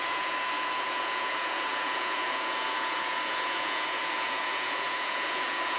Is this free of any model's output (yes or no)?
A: no